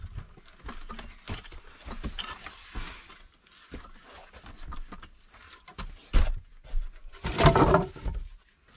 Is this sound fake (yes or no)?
no